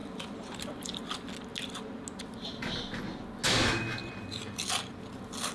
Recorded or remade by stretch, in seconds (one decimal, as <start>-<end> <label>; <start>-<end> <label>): 0.0-1.0 remade; 1.0-4.0 recorded; 4.0-4.9 remade; 4.9-5.5 recorded